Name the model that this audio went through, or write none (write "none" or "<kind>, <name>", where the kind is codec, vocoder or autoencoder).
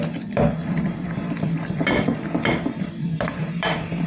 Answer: vocoder, BigVGAN v2